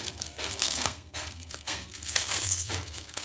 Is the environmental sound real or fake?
fake